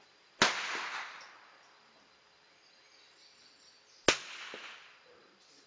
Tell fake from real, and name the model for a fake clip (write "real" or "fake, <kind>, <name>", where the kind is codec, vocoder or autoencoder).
real